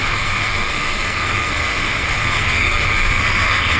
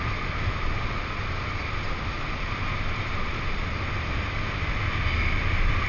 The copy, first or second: first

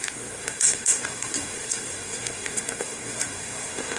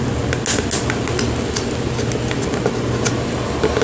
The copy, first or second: first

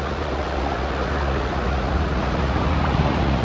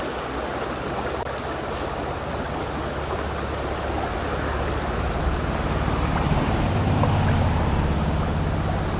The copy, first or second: first